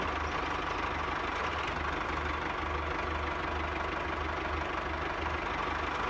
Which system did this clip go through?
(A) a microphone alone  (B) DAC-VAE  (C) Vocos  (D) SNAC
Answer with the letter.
A